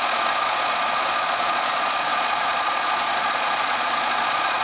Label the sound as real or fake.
fake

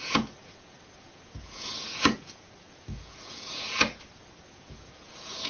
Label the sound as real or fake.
fake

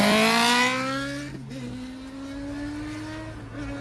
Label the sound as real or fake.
real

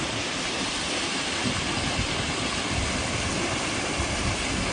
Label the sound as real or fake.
real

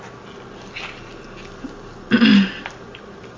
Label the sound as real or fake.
real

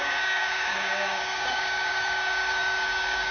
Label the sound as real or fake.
fake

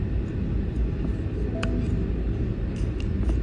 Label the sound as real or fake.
real